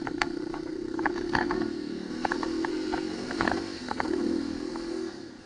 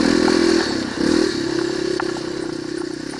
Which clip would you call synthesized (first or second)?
first